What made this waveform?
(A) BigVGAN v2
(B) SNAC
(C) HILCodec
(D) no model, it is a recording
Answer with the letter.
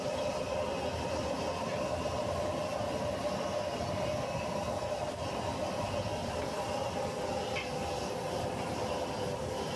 D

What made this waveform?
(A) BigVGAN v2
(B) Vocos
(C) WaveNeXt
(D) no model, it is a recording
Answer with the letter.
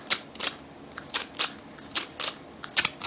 D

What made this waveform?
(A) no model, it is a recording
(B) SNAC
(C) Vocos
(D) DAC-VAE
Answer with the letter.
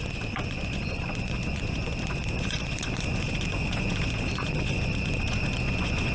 C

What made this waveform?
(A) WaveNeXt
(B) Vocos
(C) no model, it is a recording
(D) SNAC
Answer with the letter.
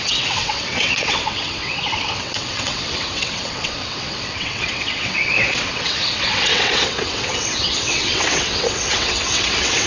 A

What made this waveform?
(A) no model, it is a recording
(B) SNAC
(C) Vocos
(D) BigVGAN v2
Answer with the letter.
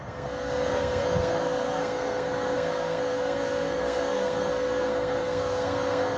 B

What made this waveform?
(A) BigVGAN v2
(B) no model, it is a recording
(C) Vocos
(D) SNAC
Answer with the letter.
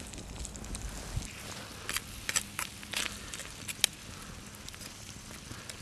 B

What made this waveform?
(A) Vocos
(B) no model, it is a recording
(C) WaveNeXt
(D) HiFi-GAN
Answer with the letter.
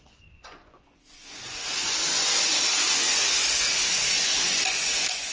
A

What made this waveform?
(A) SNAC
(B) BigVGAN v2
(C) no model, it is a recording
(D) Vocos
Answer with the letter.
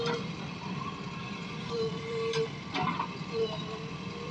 B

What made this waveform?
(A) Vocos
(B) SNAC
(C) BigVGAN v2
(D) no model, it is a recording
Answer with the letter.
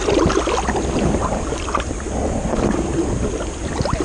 D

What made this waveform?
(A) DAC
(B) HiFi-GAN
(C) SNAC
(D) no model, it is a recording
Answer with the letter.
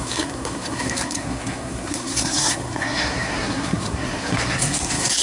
C